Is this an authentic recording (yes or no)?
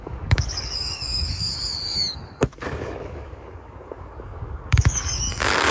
no